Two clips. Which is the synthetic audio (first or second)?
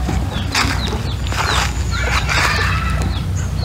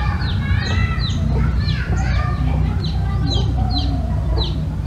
second